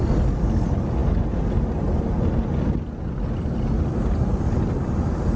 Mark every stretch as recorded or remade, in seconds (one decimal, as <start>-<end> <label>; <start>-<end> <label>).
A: 0.0-5.4 recorded